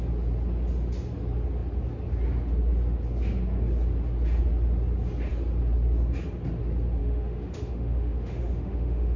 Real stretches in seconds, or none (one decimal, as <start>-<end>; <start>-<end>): 0.0-7.0